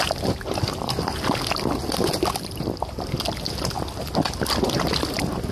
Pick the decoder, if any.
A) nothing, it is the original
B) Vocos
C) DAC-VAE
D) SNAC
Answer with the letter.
A